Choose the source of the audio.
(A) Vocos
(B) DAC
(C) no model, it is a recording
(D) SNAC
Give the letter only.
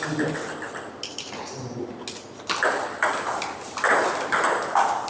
C